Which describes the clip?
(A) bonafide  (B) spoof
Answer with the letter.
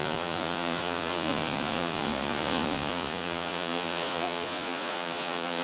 B